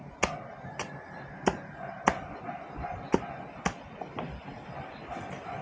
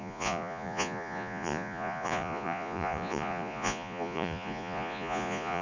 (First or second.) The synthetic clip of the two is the second